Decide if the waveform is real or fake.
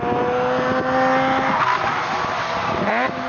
real